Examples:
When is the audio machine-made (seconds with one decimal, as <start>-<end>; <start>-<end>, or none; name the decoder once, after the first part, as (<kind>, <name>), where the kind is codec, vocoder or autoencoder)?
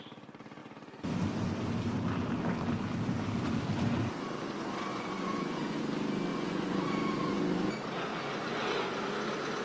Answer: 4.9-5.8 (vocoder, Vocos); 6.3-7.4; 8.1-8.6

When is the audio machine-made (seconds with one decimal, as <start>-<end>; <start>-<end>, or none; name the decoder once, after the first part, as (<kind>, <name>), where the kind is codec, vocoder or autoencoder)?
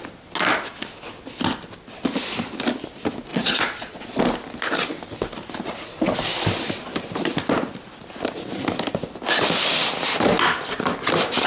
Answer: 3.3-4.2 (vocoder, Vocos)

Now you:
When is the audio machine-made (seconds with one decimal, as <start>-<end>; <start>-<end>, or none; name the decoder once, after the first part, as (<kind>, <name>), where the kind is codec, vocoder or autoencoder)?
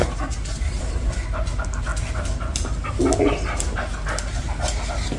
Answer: none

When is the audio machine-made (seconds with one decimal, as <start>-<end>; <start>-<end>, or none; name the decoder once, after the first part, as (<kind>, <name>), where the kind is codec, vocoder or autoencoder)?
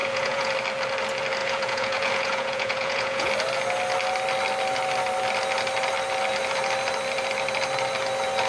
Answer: 0.0-0.5 (vocoder, Vocos); 1.4-3.3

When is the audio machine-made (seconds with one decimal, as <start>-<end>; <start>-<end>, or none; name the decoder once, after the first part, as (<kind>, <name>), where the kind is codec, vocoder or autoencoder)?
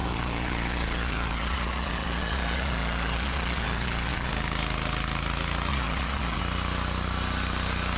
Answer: 0.0-4.3 (vocoder, Vocos); 5.7-6.4